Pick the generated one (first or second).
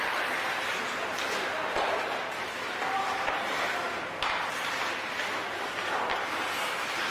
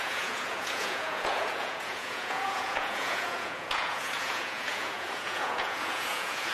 second